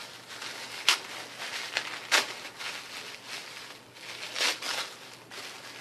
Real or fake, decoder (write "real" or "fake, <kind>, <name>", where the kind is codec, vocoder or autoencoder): real